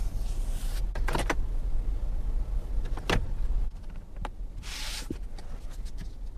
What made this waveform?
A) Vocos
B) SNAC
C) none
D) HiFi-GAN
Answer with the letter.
C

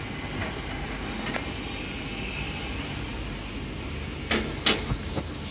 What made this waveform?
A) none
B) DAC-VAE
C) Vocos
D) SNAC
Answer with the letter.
A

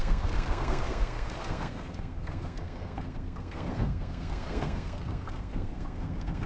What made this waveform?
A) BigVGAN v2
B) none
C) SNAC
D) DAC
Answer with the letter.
C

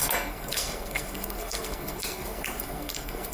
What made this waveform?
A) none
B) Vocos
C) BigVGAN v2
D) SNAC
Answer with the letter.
D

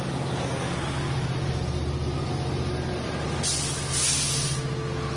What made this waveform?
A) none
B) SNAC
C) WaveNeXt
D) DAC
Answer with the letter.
A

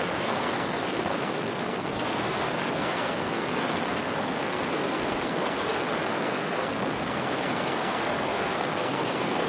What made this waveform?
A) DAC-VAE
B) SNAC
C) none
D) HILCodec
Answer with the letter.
B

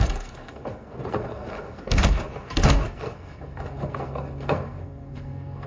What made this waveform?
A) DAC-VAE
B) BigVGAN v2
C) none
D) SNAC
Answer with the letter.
D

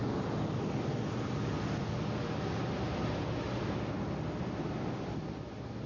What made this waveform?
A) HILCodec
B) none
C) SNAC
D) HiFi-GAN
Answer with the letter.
B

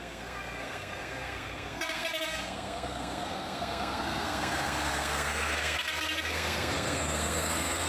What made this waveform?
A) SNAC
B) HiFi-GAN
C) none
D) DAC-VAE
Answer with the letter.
A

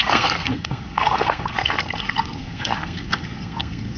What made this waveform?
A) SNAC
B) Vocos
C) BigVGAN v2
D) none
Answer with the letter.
A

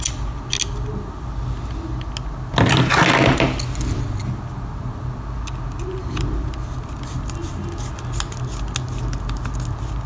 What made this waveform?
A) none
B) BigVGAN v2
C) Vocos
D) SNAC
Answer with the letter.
A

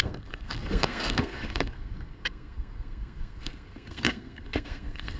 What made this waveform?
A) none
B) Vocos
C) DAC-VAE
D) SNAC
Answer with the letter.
D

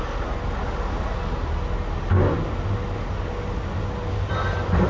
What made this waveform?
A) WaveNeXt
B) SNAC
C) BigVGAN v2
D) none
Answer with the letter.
D